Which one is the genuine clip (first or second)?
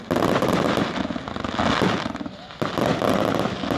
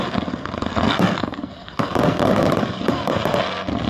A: first